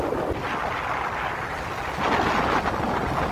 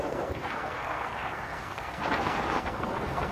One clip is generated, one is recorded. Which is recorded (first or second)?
first